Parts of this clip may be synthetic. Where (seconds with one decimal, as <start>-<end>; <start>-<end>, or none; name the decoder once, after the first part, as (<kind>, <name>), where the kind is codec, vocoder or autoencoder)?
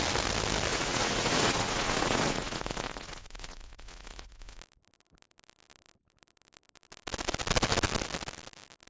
0.7-4.6 (vocoder, Vocos)